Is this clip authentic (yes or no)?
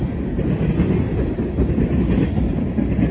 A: yes